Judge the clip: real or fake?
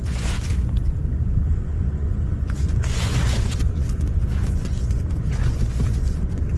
fake